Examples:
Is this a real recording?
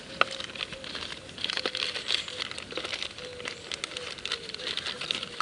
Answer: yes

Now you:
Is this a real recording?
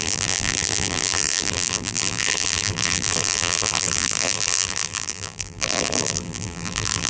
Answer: no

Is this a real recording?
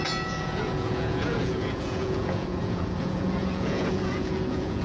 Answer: no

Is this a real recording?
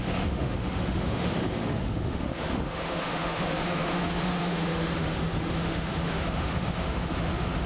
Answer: no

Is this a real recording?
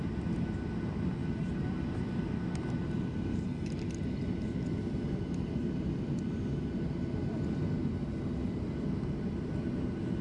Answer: yes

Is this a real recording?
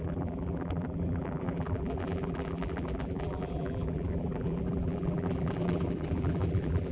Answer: no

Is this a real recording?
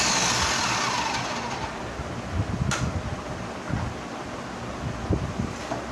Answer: yes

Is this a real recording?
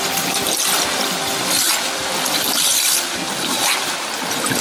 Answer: no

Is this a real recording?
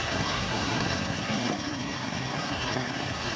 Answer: no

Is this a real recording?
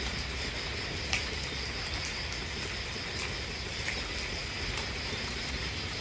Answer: yes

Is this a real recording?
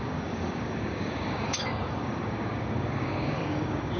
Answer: no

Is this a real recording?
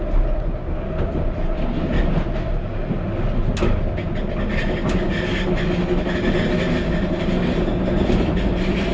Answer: yes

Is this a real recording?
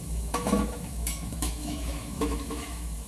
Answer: no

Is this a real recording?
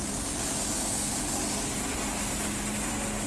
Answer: yes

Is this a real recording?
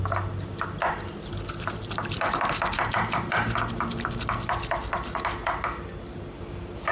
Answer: yes